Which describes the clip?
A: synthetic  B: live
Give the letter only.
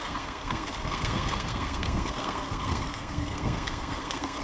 A